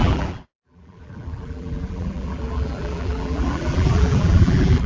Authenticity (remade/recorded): remade